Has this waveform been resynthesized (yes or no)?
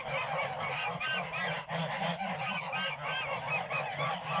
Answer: yes